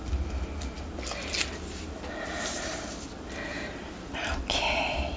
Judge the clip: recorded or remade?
recorded